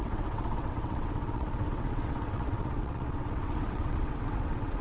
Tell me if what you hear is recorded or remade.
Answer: remade